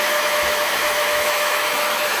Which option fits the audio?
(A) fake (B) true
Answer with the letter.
A